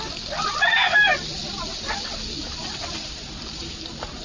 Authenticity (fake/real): real